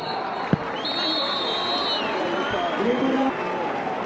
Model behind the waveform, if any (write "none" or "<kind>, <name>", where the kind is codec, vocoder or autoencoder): none